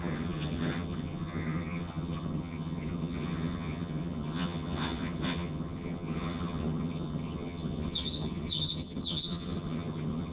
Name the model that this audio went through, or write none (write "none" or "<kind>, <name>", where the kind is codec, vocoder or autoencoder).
vocoder, HiFi-GAN